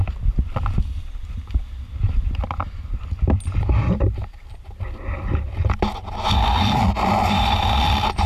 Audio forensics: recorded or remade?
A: recorded